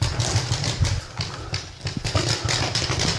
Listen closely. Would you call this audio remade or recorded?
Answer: recorded